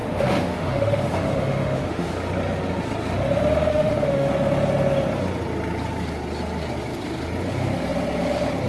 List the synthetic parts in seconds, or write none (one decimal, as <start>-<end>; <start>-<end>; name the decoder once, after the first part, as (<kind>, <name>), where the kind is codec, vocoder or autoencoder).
0.0-2.1 (autoencoder, DAC-VAE); 3.7-4.3